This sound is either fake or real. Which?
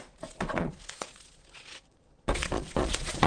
fake